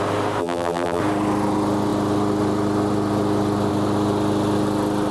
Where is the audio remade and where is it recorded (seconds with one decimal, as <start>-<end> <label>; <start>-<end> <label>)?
0.0-0.4 recorded; 0.4-1.0 remade; 1.0-5.1 recorded